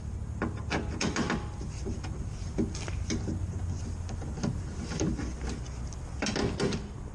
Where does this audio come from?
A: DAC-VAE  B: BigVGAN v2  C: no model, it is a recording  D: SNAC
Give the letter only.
C